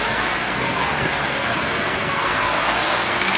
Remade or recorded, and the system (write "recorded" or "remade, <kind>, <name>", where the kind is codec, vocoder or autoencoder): remade, codec, SNAC